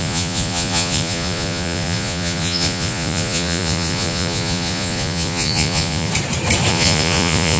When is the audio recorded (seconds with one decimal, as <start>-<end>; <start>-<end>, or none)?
6.1-6.7